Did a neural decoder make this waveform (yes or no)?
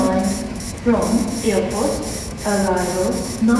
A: yes